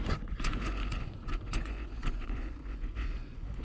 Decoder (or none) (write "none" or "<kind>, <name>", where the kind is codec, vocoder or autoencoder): vocoder, Vocos